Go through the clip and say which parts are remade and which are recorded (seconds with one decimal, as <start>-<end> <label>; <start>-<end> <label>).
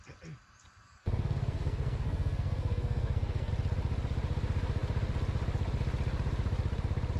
0.0-1.0 recorded; 1.0-3.5 remade; 3.5-7.2 recorded